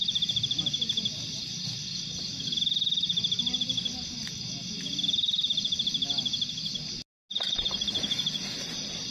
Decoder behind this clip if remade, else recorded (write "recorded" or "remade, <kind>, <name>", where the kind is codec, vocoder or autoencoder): recorded